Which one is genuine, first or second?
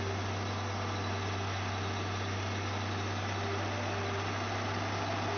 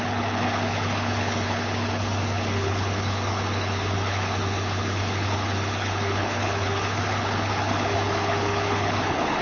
first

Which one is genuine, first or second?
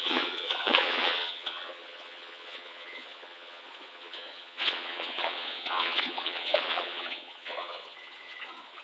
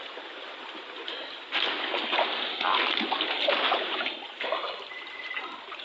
second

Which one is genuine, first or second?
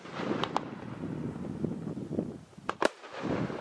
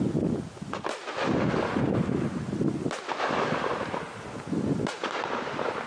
second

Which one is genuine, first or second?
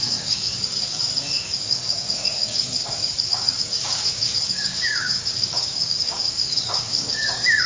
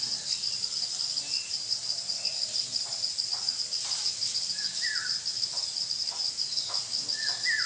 second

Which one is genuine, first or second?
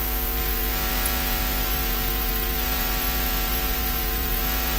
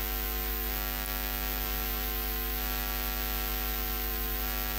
second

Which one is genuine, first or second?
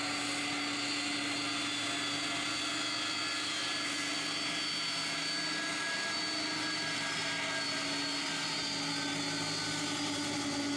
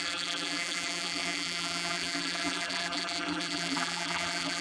first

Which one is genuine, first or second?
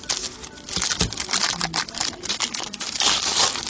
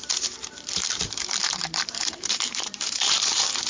first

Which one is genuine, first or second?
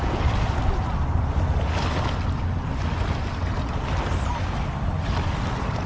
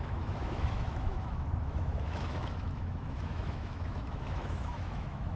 first